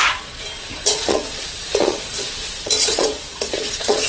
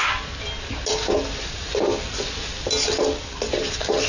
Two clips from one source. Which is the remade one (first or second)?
first